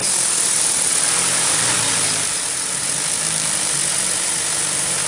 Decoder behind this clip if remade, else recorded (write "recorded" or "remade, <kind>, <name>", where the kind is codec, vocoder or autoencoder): recorded